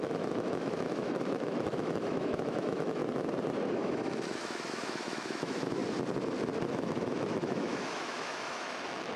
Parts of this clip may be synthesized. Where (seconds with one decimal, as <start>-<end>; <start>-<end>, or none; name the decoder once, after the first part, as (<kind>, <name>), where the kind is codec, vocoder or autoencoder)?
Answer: 0.0-3.0 (autoencoder, DAC-VAE); 3.7-5.8; 6.7-9.2